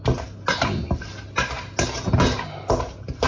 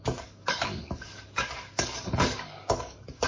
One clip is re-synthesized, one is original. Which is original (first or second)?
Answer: first